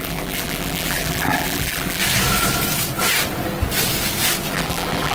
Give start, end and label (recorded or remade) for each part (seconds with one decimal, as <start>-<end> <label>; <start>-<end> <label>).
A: 0.0-2.0 remade; 2.0-4.5 recorded; 4.5-5.1 remade